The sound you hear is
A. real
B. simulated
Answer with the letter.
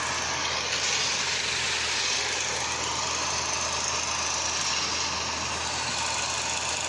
A